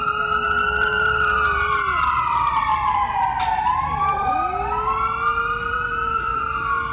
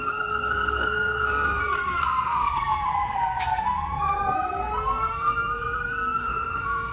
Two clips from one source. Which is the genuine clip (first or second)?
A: first